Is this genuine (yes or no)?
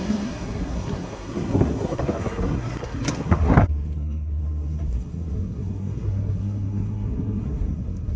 no